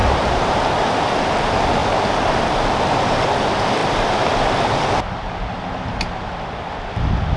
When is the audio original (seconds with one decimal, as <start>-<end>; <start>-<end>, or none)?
0.8-1.8; 2.3-7.4